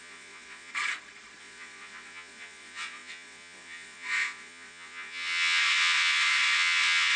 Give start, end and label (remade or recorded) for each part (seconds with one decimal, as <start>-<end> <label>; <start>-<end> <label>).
0.0-0.7 remade; 0.7-1.4 recorded; 1.4-7.2 remade

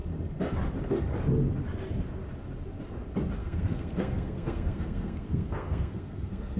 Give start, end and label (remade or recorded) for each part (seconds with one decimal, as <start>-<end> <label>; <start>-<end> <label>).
0.0-3.4 recorded; 3.4-6.6 remade

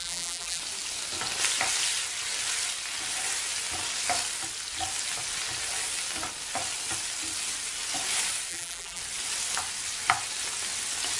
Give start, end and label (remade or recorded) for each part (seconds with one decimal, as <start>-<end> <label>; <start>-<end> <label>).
0.0-0.6 remade; 0.6-8.5 recorded; 8.5-9.0 remade; 9.0-11.2 recorded

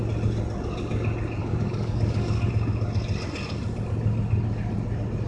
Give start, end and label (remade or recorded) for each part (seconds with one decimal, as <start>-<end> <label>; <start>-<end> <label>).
0.0-1.4 recorded; 1.4-2.5 remade; 2.5-5.3 recorded

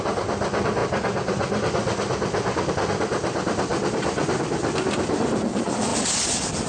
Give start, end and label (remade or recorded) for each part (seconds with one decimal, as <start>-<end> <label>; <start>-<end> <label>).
0.0-6.7 recorded

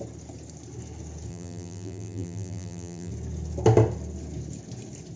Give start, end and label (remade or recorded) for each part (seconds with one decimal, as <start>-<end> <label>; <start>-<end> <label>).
0.0-1.3 recorded; 1.3-3.1 remade; 3.1-5.2 recorded